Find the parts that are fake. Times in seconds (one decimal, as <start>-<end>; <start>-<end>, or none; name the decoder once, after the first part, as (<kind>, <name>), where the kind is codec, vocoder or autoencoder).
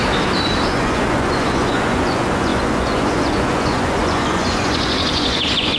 0.7-5.8 (vocoder, Vocos)